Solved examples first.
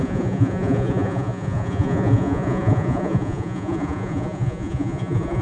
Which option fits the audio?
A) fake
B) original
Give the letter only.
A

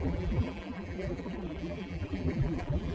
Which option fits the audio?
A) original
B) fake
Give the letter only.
B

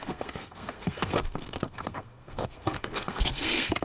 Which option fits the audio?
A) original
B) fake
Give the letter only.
B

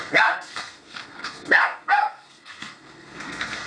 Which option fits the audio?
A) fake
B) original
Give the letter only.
A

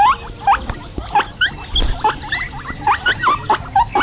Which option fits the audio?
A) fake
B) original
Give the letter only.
B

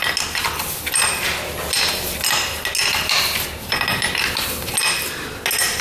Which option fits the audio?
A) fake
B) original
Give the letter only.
B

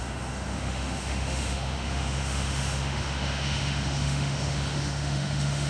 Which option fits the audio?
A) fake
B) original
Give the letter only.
A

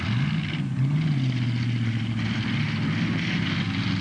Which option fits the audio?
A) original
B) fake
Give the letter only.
A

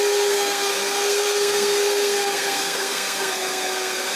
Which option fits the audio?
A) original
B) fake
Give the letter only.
B